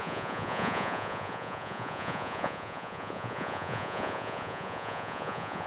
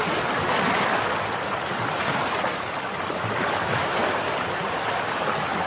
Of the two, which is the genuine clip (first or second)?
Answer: second